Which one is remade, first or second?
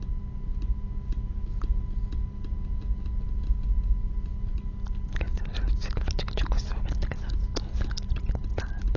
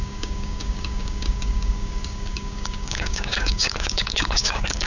second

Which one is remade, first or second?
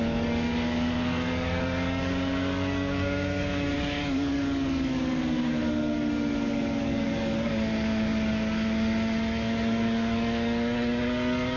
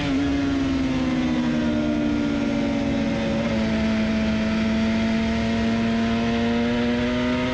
first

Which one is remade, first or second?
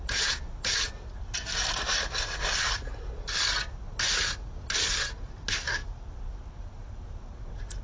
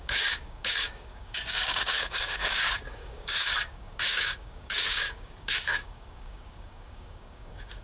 second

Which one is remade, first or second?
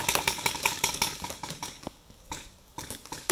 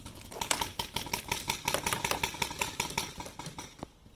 first